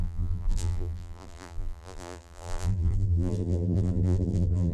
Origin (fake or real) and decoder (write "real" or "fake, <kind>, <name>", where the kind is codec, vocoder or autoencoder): fake, vocoder, BigVGAN v2